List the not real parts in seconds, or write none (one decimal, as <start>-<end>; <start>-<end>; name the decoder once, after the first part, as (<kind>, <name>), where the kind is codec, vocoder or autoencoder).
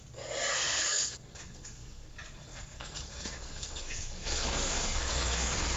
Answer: 0.5-2.1 (codec, SNAC); 2.5-5.8